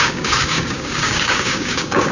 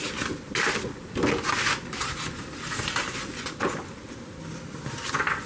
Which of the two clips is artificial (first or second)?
first